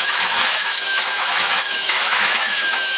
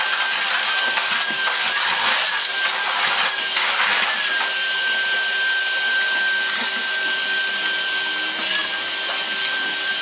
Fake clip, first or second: first